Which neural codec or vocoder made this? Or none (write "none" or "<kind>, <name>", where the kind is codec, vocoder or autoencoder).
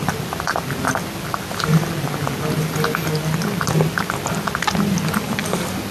none